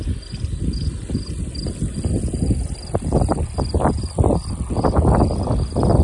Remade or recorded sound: recorded